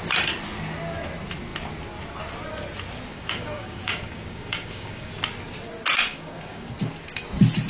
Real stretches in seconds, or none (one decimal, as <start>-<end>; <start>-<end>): 0.0-3.1; 5.1-6.1; 6.7-7.7

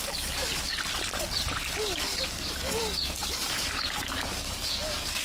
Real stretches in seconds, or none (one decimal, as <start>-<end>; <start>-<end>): 0.7-1.8

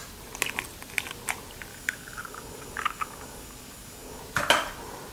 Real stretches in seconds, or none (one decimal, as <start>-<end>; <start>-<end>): 0.0-1.7; 4.2-5.1

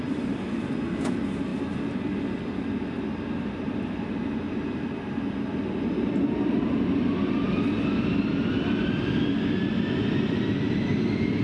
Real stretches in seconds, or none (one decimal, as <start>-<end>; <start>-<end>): 0.0-11.4